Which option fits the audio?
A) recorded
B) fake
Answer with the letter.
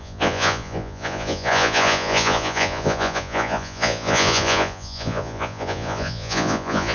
B